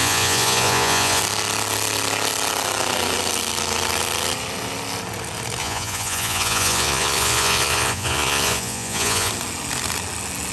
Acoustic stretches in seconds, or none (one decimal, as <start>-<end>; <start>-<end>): 1.2-5.6; 9.3-10.5